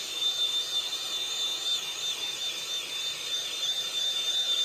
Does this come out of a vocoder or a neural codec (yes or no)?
no